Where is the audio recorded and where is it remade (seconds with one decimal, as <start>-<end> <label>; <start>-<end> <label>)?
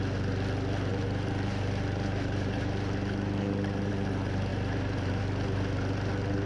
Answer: 0.0-0.9 recorded; 0.9-3.9 remade; 3.9-4.5 recorded; 4.5-5.2 remade; 5.2-6.5 recorded